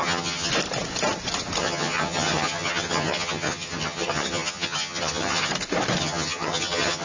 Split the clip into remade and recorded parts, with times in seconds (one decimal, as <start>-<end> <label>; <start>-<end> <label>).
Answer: 0.0-0.5 remade; 0.5-1.6 recorded; 1.6-5.5 remade; 5.5-6.0 recorded; 6.0-7.0 remade